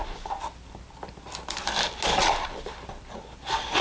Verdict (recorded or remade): recorded